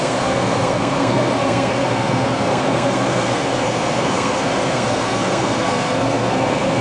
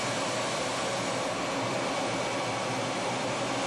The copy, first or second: first